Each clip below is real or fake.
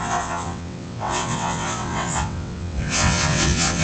fake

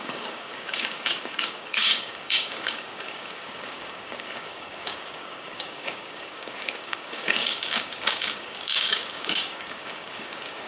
fake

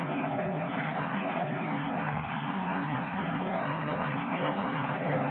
fake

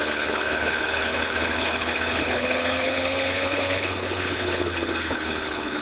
fake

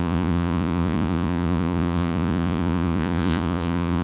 fake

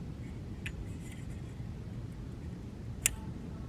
real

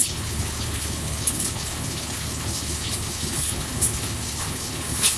fake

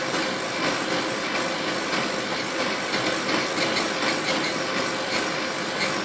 real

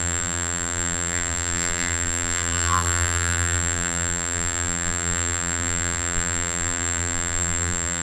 fake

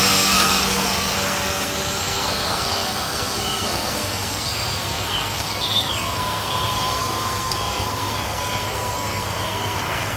fake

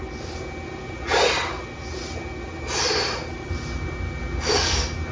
real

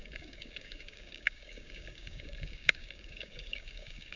fake